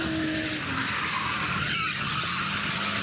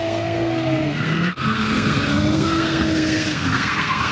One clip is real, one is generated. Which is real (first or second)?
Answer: first